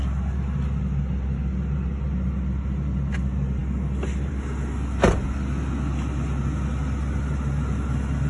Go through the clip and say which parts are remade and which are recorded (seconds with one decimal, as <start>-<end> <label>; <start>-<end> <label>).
0.0-8.3 recorded